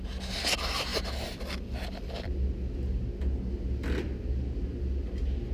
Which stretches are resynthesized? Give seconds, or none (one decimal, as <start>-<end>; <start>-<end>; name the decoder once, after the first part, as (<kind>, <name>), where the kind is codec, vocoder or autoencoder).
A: none